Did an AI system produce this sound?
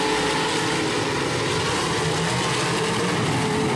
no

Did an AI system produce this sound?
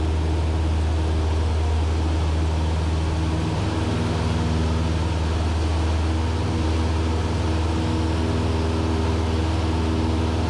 no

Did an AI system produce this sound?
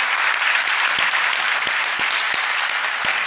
no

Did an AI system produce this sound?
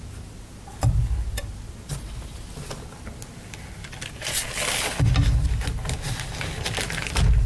no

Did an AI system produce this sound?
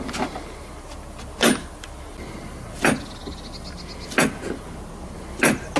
no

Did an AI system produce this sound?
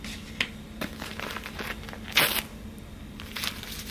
no